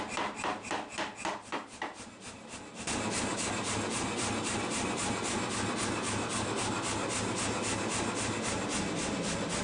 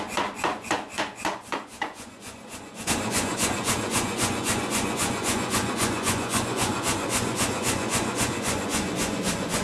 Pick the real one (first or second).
first